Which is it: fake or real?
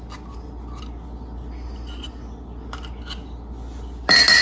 real